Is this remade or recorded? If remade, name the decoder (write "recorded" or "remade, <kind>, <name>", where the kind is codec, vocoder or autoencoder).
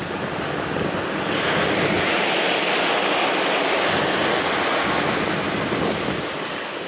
recorded